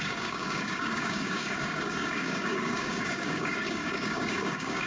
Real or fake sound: fake